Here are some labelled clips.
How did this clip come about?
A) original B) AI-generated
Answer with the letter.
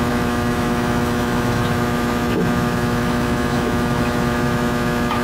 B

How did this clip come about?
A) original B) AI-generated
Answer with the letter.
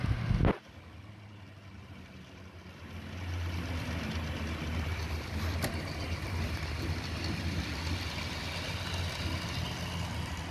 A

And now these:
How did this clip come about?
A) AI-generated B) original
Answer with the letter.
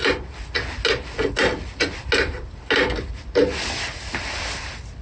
B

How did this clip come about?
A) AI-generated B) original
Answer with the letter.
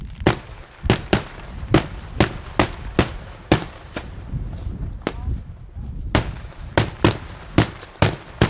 B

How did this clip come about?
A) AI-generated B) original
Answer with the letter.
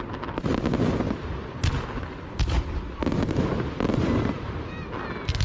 B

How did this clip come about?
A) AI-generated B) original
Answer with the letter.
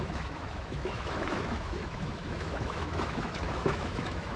A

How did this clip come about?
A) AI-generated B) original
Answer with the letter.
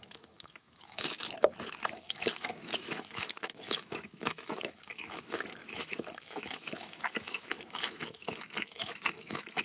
A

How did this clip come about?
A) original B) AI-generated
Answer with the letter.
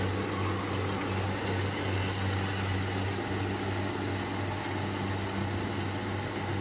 A